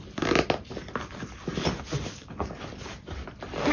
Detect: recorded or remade recorded